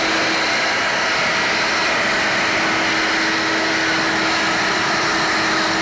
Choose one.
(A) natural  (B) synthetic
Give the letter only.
A